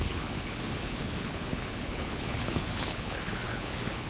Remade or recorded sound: remade